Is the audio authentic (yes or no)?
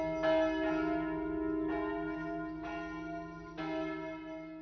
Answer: yes